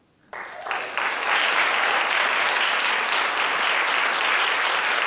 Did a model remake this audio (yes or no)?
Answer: no